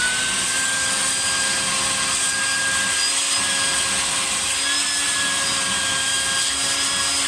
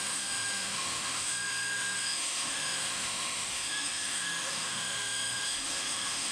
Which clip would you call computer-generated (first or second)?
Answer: second